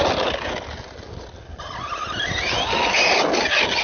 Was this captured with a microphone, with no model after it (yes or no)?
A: yes